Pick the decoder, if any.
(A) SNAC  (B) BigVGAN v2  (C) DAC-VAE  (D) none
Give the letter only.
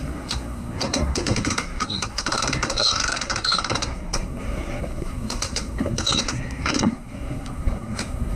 A